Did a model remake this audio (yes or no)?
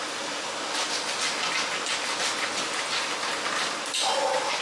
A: no